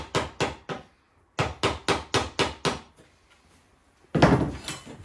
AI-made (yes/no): no